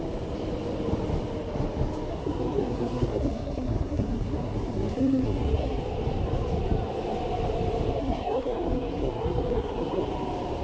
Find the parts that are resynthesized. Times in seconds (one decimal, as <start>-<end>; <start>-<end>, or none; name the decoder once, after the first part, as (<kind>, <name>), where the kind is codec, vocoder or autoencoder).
2.1-5.8 (codec, SNAC); 8.0-10.0